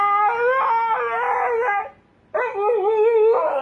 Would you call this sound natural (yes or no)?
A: yes